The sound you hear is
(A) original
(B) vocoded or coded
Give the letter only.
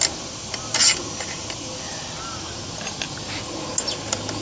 A